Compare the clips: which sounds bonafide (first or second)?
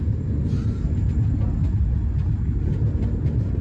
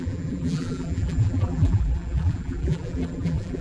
first